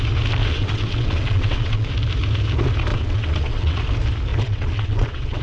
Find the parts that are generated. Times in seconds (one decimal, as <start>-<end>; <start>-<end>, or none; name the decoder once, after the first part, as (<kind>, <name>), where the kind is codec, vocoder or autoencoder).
0.4-1.9 (vocoder, WaveNeXt); 2.9-3.8; 4.3-5.4